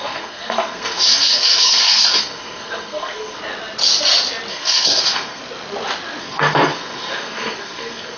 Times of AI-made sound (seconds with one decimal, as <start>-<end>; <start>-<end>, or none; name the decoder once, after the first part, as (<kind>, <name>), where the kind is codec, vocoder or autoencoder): 0.0-3.4 (codec, SNAC); 4.5-5.4; 6.2-8.2